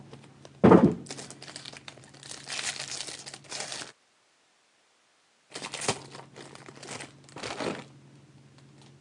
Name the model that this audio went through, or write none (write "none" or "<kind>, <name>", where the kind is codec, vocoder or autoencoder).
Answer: none